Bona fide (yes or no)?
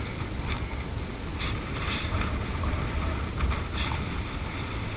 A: yes